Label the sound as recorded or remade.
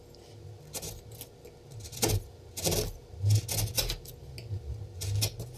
recorded